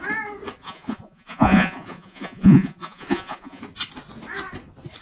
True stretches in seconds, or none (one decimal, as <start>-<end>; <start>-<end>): 0.0-0.6; 3.6-5.0